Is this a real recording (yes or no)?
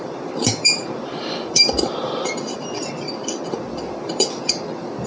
no